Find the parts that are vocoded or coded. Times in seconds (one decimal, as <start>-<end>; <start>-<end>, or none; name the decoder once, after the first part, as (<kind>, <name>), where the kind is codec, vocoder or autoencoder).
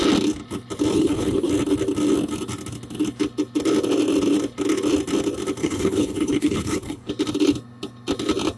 0.9-1.5 (codec, HILCodec); 5.6-7.1